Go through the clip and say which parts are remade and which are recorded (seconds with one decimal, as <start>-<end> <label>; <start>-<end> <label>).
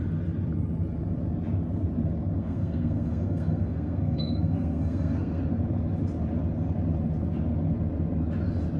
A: 0.0-2.4 recorded; 2.4-5.4 remade; 5.4-8.8 recorded